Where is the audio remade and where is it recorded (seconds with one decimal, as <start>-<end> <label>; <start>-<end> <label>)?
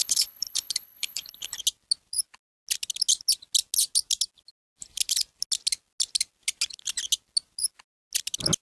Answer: 0.0-1.6 remade; 1.6-8.7 recorded